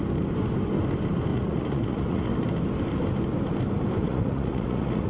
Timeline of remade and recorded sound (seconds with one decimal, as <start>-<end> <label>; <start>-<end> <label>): 0.0-1.3 recorded; 1.3-2.3 remade; 2.3-4.0 recorded; 4.0-5.1 remade